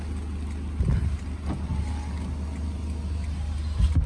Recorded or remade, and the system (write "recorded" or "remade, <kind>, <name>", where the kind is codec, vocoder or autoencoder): recorded